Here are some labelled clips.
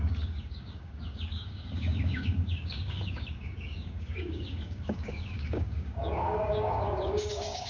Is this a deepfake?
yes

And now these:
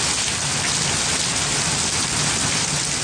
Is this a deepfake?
no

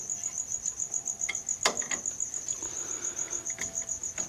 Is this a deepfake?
no